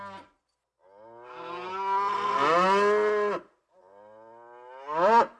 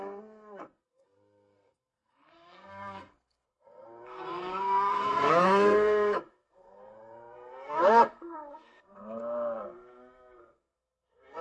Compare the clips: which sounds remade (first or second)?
second